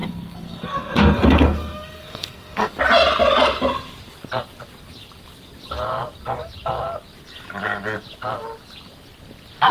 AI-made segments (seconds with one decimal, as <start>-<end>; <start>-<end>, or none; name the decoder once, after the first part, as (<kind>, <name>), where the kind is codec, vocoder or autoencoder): 0.0-2.7 (codec, SNAC)